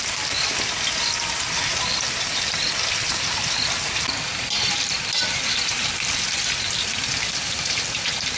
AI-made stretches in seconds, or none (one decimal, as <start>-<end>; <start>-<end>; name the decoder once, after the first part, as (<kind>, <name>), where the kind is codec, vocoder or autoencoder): 0.0-8.4 (vocoder, BigVGAN v2)